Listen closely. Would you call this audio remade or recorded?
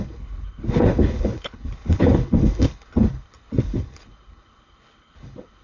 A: remade